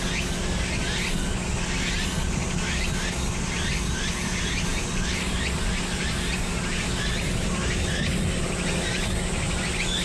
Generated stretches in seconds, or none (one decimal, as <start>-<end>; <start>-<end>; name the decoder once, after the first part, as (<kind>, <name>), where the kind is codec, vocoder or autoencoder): none